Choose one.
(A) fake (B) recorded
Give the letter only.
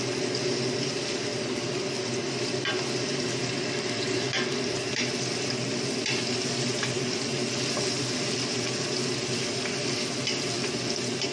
B